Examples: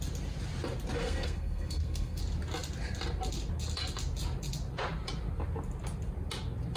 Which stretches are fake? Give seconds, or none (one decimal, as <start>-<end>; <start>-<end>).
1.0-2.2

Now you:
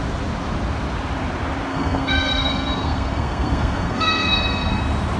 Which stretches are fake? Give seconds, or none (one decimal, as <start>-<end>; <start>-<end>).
1.7-4.8

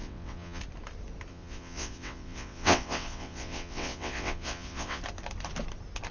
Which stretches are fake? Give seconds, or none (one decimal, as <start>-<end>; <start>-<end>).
0.0-0.6; 1.3-5.0

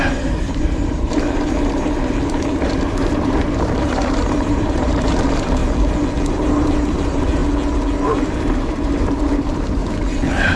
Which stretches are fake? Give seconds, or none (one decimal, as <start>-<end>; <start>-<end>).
0.0-5.6; 6.3-7.4; 8.1-9.8

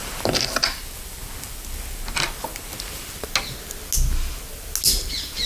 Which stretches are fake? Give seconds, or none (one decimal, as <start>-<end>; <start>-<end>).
0.0-3.3